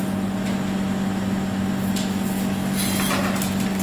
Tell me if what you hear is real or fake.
real